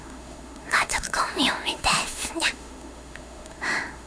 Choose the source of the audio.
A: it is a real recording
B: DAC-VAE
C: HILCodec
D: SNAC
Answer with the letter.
B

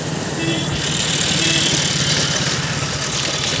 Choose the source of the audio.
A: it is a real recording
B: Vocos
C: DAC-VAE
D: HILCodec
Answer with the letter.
A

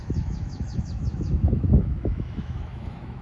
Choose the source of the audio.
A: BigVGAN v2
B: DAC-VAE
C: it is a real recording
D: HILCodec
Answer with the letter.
B